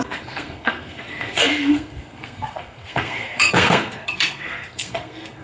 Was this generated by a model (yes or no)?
yes